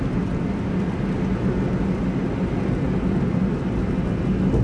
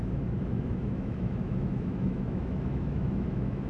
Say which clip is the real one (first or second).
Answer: first